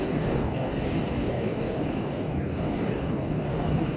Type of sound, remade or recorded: remade